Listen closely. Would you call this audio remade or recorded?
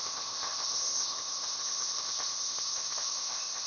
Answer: remade